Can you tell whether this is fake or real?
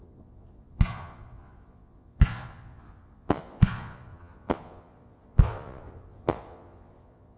fake